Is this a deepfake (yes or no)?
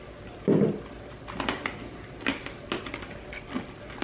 no